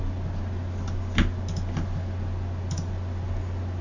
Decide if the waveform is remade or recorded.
recorded